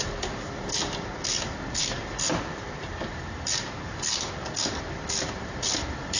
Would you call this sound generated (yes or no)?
yes